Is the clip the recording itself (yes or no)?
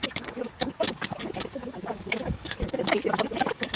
no